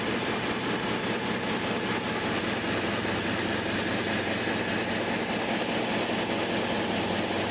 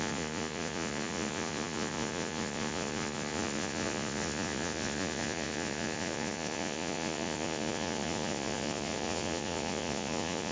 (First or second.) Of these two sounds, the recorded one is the first